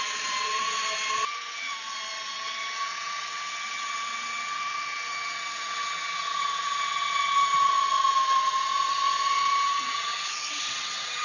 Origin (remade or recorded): remade